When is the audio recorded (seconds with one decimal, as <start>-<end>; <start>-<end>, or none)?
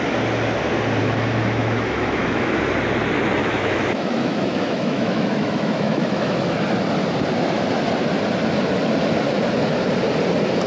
0.0-1.0; 2.6-3.4; 6.5-10.7